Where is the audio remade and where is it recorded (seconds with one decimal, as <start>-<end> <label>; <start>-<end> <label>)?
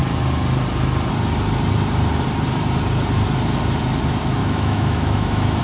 0.0-4.4 recorded; 4.4-5.6 remade